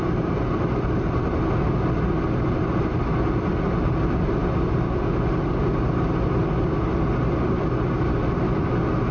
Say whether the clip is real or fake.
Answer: real